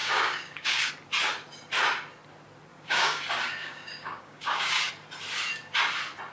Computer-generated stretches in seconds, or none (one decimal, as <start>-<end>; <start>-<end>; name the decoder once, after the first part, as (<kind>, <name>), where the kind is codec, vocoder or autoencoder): 0.0-0.9 (codec, DAC); 2.7-3.2; 3.6-4.9